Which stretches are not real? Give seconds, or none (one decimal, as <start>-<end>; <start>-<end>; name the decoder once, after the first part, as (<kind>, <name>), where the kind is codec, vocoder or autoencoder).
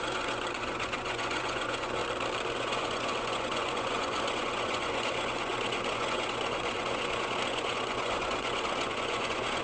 0.0-2.0 (vocoder, Vocos); 2.5-9.6